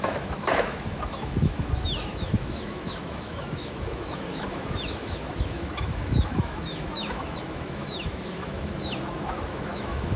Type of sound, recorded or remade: remade